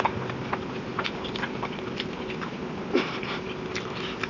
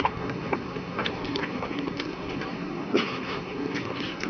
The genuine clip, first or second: first